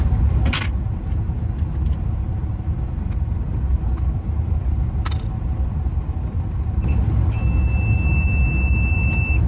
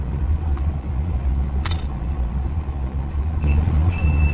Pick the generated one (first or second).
second